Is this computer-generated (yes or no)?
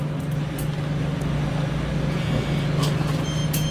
no